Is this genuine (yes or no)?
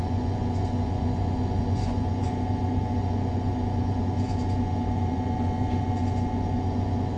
no